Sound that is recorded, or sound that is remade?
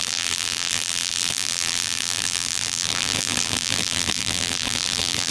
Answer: remade